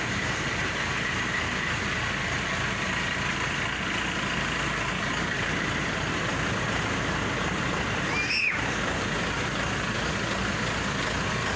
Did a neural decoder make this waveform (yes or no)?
no